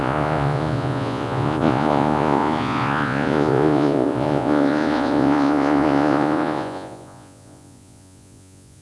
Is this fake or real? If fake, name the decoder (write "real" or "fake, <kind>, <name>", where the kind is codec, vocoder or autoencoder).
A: fake, vocoder, Vocos